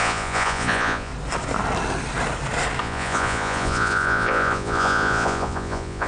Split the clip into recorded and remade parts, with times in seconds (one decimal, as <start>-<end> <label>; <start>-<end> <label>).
0.0-1.1 remade; 1.1-2.8 recorded; 2.8-6.1 remade